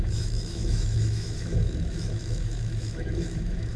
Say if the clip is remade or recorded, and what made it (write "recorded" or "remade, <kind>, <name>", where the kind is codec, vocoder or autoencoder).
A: remade, autoencoder, DAC-VAE